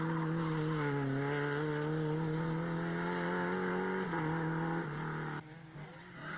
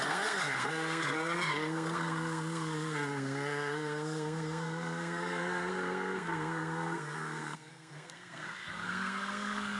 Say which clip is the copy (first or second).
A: second